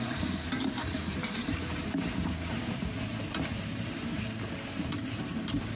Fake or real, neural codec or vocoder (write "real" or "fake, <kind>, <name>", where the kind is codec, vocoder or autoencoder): fake, vocoder, BigVGAN v2